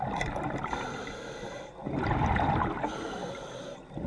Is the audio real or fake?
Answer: real